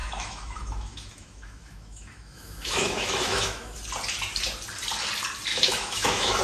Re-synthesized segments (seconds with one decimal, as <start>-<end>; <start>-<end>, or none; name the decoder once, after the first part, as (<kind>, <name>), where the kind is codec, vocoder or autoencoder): 0.0-3.8 (autoencoder, DAC-VAE); 5.5-6.4